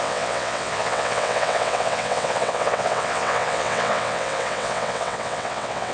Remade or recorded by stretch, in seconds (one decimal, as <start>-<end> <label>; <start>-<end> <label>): 0.0-5.9 remade